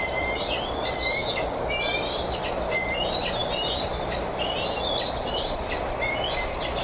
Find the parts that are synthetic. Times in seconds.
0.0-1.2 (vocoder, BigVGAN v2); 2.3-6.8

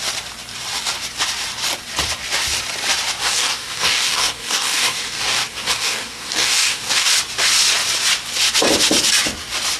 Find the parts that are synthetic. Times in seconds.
3.2-7.1 (codec, DAC)

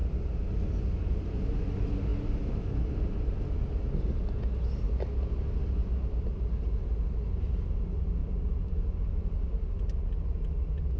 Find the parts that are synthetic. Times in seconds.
8.2-9.2 (vocoder, BigVGAN v2)

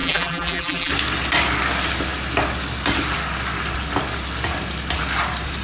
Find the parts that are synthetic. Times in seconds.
0.0-0.9 (vocoder, BigVGAN v2)

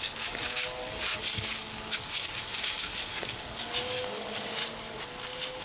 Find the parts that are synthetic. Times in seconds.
0.0-4.6 (codec, DAC)

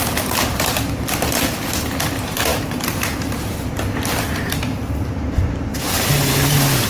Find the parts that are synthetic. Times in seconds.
none

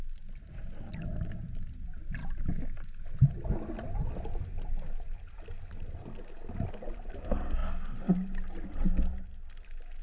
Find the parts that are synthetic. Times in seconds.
none

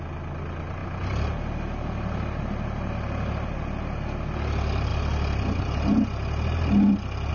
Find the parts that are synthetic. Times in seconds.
none